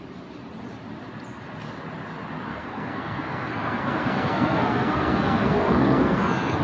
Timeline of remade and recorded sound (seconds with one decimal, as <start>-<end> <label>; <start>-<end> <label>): 0.0-2.5 recorded; 2.5-6.6 remade